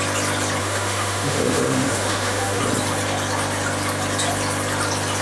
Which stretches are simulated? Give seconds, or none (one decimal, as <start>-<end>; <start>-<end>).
0.6-2.6